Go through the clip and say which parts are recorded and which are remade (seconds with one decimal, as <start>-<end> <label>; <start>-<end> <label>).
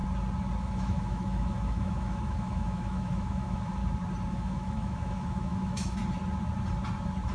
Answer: 0.0-0.6 recorded; 0.6-3.8 remade; 3.8-4.3 recorded; 4.3-6.0 remade; 6.0-7.3 recorded